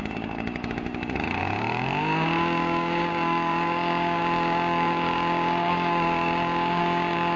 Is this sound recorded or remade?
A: remade